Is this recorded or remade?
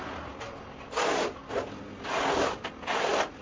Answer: recorded